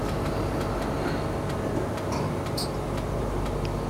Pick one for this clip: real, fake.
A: real